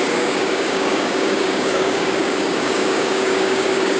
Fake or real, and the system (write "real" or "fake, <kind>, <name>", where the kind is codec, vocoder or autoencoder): fake, codec, DAC